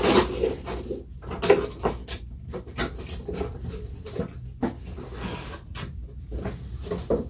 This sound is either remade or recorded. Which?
recorded